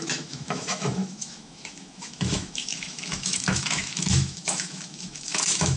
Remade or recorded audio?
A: remade